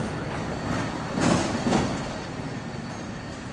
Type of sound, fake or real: real